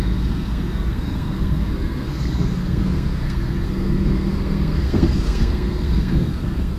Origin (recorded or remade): remade